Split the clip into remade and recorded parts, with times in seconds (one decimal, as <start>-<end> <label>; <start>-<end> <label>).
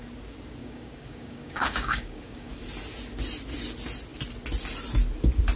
0.0-0.6 recorded; 0.6-2.5 remade; 2.5-5.6 recorded